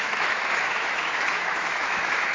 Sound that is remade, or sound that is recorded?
remade